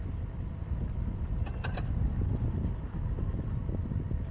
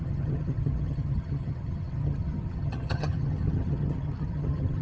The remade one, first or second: second